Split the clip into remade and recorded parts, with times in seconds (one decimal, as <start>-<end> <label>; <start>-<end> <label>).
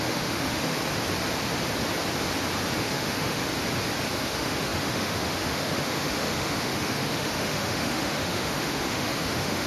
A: 0.0-0.8 remade; 0.8-2.8 recorded; 2.8-3.4 remade; 3.4-4.2 recorded; 4.2-9.7 remade